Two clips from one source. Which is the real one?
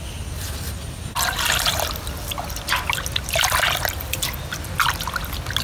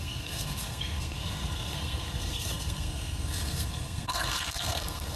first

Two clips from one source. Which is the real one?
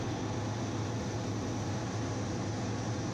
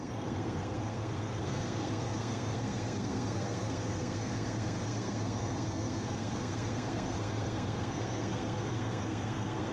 first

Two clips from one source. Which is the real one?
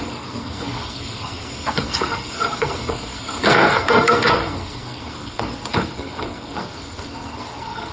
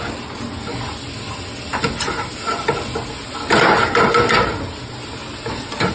second